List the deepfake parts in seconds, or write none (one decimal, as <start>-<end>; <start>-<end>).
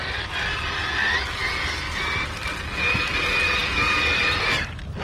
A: none